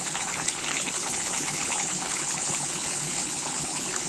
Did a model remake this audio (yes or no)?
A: yes